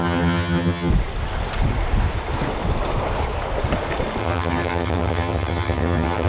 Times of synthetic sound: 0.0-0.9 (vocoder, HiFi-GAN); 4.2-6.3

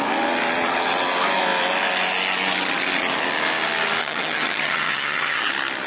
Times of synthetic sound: 4.0-5.5 (vocoder, HiFi-GAN)

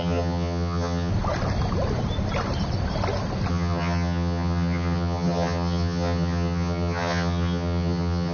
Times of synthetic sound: 0.0-1.1 (vocoder, HiFi-GAN); 3.5-8.3

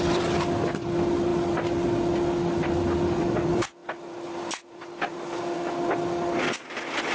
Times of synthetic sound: none

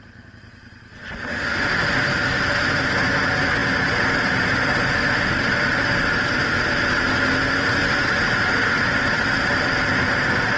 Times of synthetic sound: none

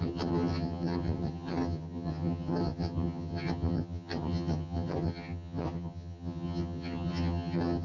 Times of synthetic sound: 0.0-7.8 (vocoder, HiFi-GAN)

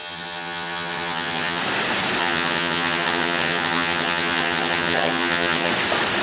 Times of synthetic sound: 0.0-1.6 (vocoder, HiFi-GAN); 2.2-5.7

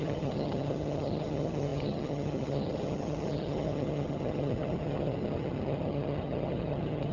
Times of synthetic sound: 0.0-7.1 (vocoder, HiFi-GAN)